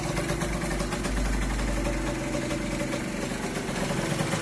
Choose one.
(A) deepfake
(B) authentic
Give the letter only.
B